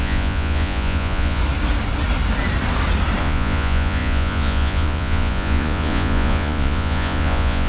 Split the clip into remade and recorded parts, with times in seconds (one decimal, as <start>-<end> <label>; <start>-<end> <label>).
0.0-1.4 remade; 1.4-3.2 recorded; 3.2-7.7 remade